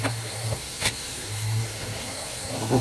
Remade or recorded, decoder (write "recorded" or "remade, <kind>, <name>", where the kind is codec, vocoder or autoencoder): remade, codec, SNAC